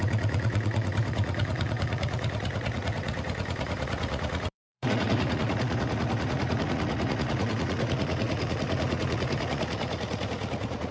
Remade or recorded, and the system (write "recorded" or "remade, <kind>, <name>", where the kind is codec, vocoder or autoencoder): remade, vocoder, Vocos